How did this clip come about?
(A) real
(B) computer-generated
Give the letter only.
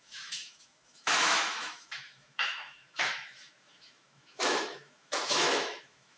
B